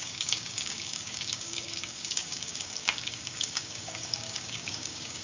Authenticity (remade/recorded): remade